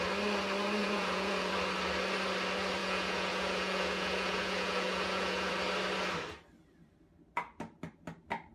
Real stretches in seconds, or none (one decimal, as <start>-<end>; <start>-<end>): 0.0-0.8; 1.5-2.8; 5.5-8.5